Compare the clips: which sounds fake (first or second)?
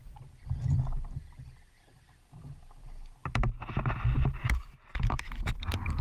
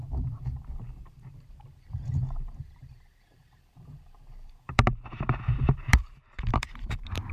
second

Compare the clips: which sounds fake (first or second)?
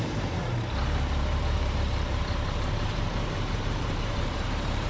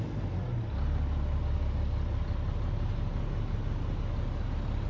first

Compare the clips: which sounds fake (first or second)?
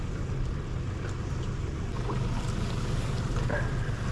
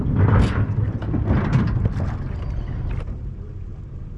second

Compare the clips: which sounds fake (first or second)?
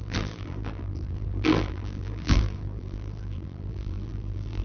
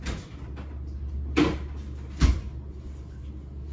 first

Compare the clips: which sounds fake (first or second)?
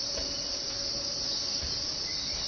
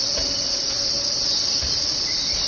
second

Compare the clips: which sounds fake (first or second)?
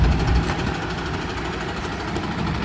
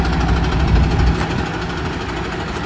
first